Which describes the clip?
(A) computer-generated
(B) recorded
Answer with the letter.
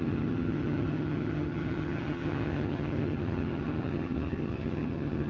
A